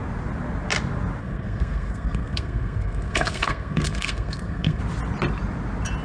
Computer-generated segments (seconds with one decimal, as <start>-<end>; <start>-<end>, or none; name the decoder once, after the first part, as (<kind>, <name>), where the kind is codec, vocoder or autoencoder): 1.2-4.8 (codec, SNAC)